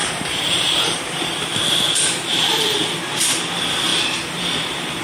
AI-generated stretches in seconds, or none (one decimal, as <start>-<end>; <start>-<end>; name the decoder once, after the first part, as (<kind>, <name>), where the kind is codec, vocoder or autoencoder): 0.0-3.0 (vocoder, BigVGAN v2); 3.9-5.0